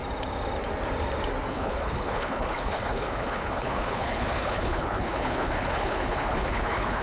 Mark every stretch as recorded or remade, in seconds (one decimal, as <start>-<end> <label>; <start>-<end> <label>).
0.0-1.5 recorded; 1.5-7.0 remade